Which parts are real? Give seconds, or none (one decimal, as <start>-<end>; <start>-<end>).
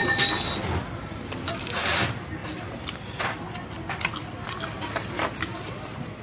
2.0-2.4